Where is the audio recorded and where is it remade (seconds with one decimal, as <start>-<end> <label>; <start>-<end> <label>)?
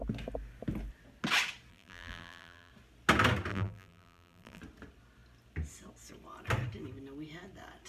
0.0-1.7 recorded; 1.7-2.7 remade; 2.7-3.5 recorded; 3.5-4.6 remade; 4.6-7.9 recorded